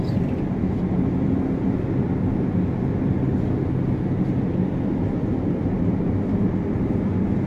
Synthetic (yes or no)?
no